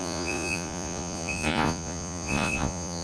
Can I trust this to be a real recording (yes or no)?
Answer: no